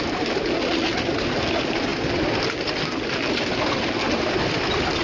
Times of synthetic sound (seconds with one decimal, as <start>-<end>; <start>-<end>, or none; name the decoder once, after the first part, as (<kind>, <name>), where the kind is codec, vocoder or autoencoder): none